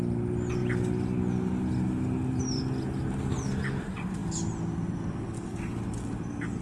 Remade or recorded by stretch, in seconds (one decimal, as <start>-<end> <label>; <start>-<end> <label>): 0.0-6.6 recorded